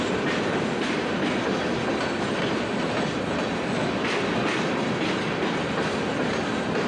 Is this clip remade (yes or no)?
no